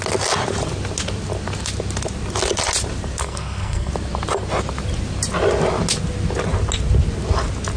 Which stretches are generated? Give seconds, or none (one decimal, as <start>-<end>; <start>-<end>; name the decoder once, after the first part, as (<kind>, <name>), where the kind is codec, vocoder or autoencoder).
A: 3.2-3.9 (codec, SNAC)